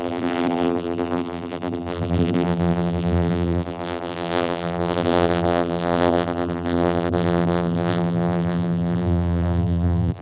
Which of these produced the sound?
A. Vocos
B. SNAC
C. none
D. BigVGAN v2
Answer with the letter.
D